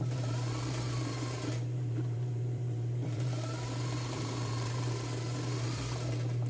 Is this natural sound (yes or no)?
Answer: no